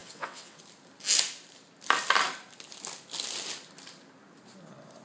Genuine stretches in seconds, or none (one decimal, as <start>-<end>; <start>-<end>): 0.6-5.0